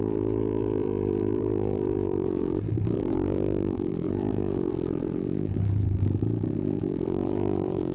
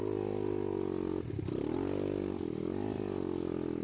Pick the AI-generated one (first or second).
first